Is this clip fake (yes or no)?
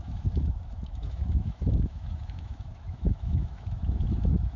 yes